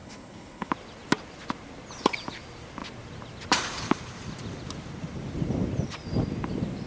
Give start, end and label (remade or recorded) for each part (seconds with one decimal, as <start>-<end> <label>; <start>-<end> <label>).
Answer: 0.0-0.7 remade; 0.7-6.9 recorded